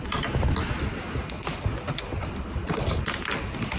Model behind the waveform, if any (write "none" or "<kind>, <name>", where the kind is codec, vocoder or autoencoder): none